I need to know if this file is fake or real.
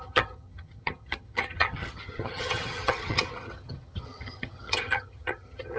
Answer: fake